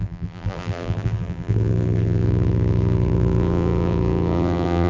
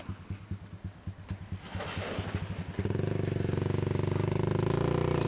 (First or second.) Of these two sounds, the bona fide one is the second